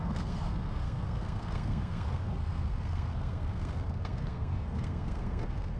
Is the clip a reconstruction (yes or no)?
yes